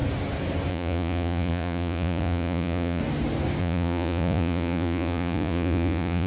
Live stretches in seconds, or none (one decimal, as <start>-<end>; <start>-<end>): 0.0-0.7; 3.0-3.6